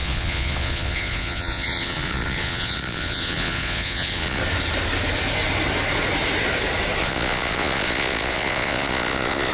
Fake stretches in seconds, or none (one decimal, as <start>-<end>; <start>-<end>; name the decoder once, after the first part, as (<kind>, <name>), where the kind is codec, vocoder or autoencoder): 0.0-4.4 (vocoder, Vocos); 7.0-9.5